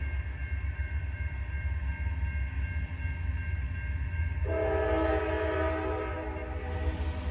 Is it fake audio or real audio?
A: real